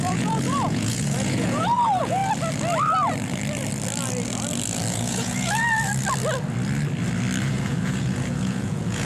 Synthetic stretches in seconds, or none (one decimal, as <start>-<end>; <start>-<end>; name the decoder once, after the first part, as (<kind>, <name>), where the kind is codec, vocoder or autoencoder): 0.0-2.2 (vocoder, Vocos); 4.9-5.9; 7.5-9.1